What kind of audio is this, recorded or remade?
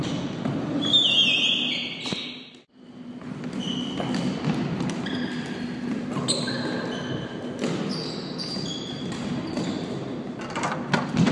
recorded